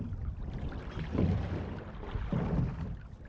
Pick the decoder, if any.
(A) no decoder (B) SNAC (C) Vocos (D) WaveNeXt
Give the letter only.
A